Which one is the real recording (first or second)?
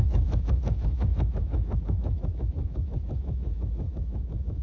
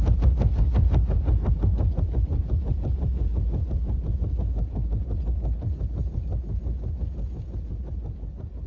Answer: second